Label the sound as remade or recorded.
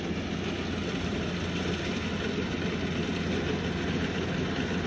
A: recorded